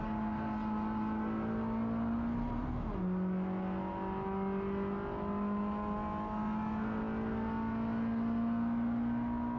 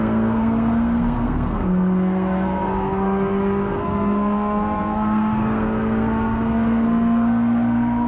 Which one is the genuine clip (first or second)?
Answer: first